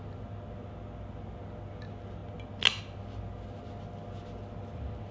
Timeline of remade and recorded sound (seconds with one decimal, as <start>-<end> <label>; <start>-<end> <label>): 0.0-5.1 recorded